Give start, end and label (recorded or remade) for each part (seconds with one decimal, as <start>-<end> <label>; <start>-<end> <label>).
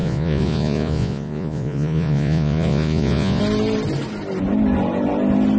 0.0-3.4 remade; 3.4-5.6 recorded